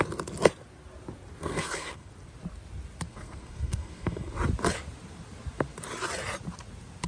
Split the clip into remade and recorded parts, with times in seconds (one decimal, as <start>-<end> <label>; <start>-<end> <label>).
0.0-1.4 recorded; 1.4-2.1 remade; 2.1-3.1 recorded; 3.1-4.3 remade; 4.3-7.1 recorded

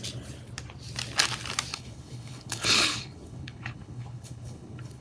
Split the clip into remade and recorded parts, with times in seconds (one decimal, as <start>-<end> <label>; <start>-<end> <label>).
0.0-1.7 recorded; 1.7-5.0 remade

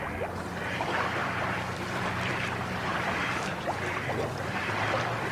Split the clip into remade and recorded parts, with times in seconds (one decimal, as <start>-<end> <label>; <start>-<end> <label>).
0.0-5.3 remade

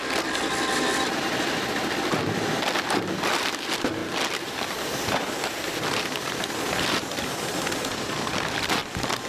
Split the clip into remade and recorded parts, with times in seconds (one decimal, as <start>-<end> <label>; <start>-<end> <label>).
0.0-4.0 remade; 4.0-4.6 recorded; 4.6-8.8 remade; 8.8-9.3 recorded

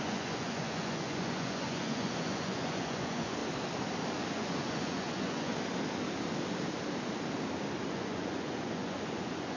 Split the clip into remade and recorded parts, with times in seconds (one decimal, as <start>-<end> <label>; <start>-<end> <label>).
0.0-3.4 remade; 3.4-4.3 recorded; 4.3-5.5 remade; 5.5-7.9 recorded; 7.9-9.6 remade

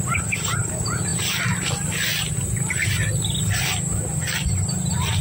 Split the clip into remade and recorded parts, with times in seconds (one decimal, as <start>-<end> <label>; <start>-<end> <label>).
0.0-5.2 recorded

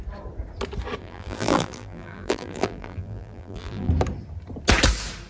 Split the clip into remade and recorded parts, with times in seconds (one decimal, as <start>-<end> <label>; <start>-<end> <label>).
0.0-1.0 recorded; 1.0-3.9 remade; 3.9-5.3 recorded

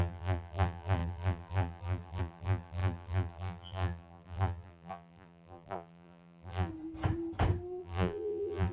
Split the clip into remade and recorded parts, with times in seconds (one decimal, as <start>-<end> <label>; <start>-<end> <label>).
0.0-6.7 remade; 6.7-7.8 recorded; 7.8-8.7 remade